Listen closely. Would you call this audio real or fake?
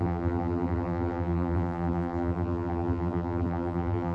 fake